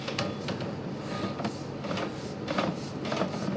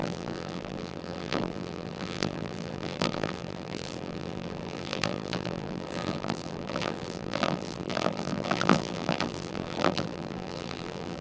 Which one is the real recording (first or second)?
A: first